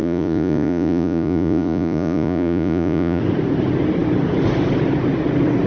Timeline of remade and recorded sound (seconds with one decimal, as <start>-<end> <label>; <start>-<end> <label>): 0.0-3.2 remade; 3.2-5.7 recorded